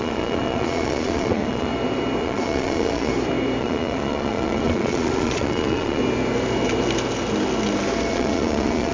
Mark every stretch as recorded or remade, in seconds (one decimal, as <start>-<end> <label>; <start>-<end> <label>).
0.0-1.7 remade; 1.7-2.2 recorded; 2.2-3.1 remade; 3.1-3.6 recorded; 3.6-6.0 remade; 6.0-8.1 recorded; 8.1-8.9 remade